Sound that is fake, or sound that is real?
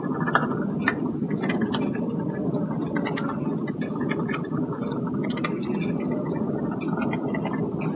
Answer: real